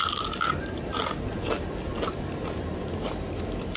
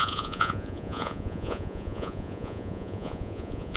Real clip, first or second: first